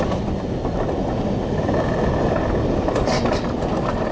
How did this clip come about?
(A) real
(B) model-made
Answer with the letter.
A